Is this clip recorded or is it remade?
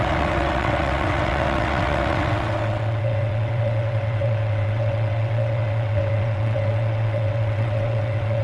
remade